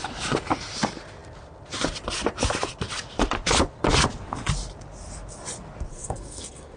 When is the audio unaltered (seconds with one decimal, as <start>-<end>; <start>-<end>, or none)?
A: 0.0-5.9